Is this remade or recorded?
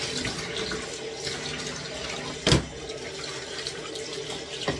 recorded